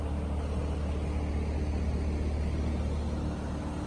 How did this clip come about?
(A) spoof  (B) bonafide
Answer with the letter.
B